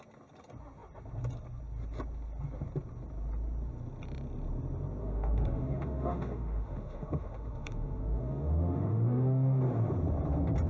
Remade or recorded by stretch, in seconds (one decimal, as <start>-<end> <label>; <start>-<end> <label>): 0.0-5.0 recorded; 5.0-9.6 remade; 9.6-10.7 recorded